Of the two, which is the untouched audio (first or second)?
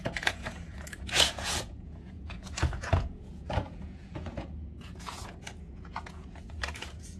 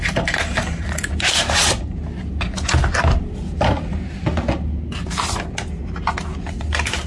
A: second